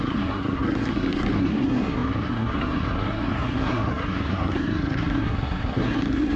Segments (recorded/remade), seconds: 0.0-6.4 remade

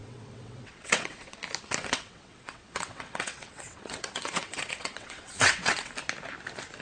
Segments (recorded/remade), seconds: 0.0-1.4 remade; 1.4-1.8 recorded; 1.8-5.9 remade; 5.9-6.8 recorded